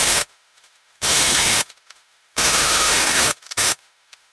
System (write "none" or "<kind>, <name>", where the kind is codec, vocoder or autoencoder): autoencoder, DAC-VAE